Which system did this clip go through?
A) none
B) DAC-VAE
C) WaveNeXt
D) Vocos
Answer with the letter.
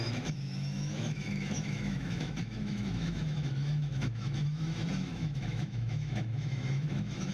B